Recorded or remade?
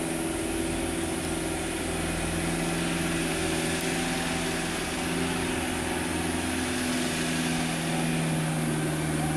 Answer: recorded